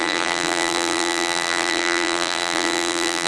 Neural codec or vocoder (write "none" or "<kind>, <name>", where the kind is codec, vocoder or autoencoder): vocoder, BigVGAN v2